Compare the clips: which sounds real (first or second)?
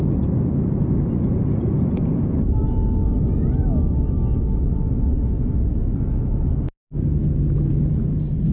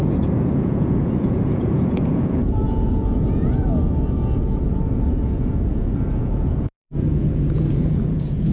first